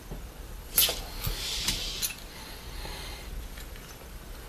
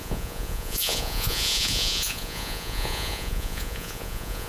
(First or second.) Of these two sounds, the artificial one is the second